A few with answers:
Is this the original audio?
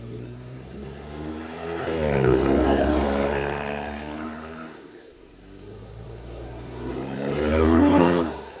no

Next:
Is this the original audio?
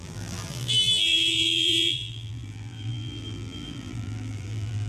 no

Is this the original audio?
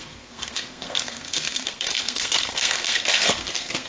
no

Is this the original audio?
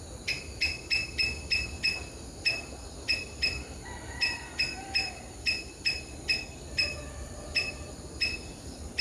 no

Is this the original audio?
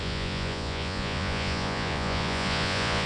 no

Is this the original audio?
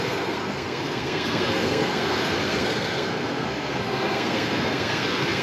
no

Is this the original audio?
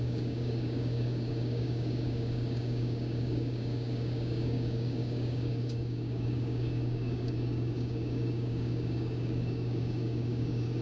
no